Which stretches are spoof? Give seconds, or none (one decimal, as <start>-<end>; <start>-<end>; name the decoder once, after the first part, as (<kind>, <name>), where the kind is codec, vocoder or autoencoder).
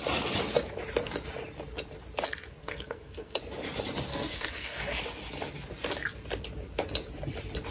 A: 2.6-3.4 (codec, SNAC); 4.1-5.0